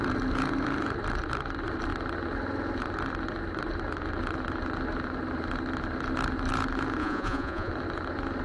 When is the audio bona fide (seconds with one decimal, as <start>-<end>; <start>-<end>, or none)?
0.0-7.0; 7.7-8.4